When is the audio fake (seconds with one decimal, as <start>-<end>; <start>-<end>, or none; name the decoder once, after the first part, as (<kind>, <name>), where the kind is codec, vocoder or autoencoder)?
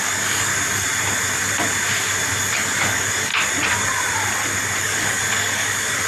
0.0-0.5 (codec, DAC); 2.5-3.3; 4.8-6.1